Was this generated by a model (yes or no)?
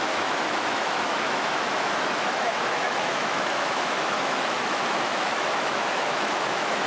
yes